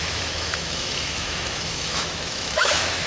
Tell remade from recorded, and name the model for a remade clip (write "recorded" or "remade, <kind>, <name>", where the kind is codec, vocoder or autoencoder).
remade, autoencoder, DAC-VAE